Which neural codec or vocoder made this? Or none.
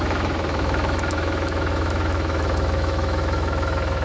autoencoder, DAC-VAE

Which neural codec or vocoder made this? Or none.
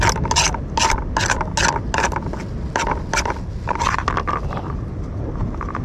none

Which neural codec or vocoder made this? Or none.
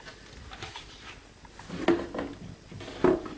none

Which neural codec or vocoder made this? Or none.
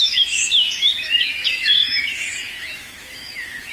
autoencoder, DAC-VAE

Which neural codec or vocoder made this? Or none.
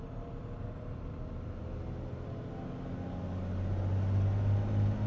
none